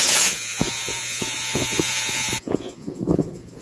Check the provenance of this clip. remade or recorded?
remade